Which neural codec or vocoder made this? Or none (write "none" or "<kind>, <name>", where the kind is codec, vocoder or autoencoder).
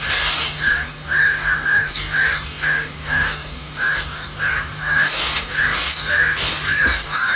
codec, DAC